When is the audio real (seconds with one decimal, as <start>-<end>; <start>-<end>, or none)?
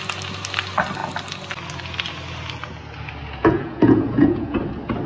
0.0-3.4; 4.6-5.1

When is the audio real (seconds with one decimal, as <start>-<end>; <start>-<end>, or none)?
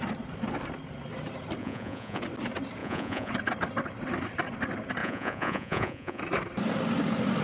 0.0-1.6; 2.2-2.8; 3.3-5.0; 6.2-7.4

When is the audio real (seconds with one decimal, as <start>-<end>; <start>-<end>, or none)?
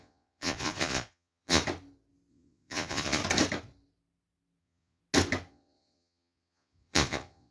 1.6-2.3; 3.2-4.6; 5.0-5.5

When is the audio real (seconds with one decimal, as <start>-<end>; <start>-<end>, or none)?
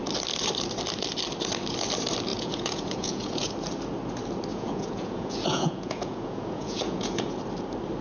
0.0-2.3; 3.5-4.5; 7.3-8.0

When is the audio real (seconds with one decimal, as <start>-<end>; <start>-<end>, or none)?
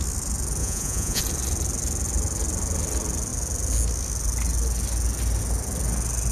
0.0-0.6; 1.2-6.3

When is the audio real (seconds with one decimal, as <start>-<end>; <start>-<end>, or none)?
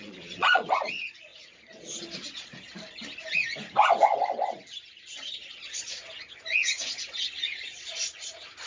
2.7-5.1